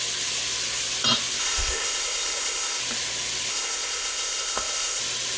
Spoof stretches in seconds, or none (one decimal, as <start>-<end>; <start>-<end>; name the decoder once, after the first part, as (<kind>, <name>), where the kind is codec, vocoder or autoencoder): 1.4-2.8 (codec, ZipCodec); 3.5-5.0